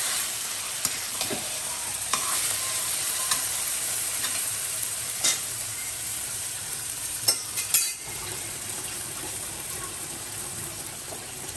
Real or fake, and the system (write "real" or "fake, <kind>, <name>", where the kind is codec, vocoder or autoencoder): fake, vocoder, BigVGAN v2